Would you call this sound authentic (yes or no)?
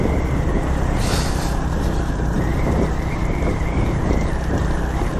no